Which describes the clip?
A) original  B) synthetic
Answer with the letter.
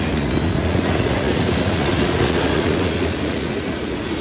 B